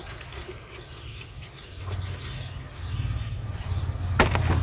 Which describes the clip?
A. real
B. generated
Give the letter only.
A